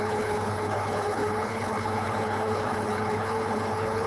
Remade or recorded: remade